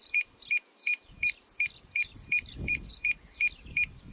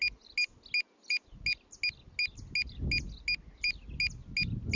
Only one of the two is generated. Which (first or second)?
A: first